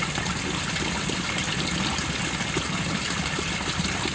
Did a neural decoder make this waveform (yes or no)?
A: no